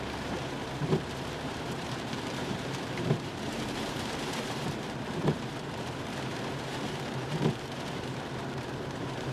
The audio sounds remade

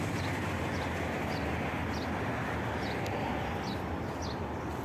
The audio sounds recorded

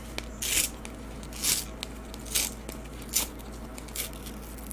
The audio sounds recorded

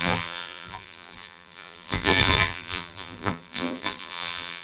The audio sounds remade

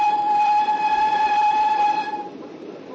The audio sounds remade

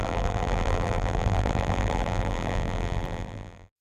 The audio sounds remade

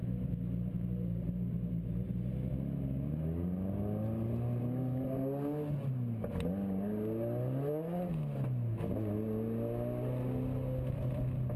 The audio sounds recorded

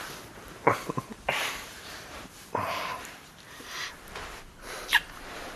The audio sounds remade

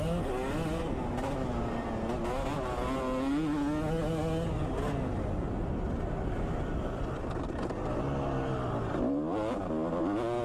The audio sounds recorded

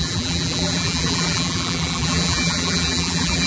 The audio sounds remade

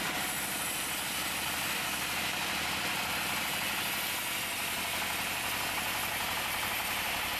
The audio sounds recorded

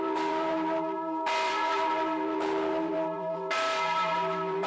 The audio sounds remade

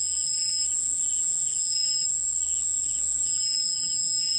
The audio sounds remade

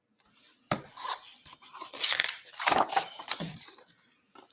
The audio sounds remade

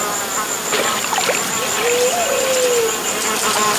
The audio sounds recorded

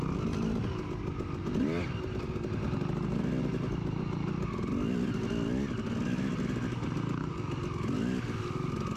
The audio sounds recorded